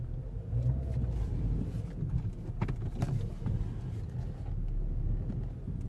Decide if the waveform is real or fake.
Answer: real